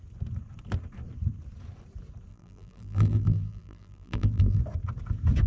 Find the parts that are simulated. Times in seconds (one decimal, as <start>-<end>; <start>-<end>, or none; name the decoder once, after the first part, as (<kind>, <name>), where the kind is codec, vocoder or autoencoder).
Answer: 2.3-4.6 (vocoder, BigVGAN v2)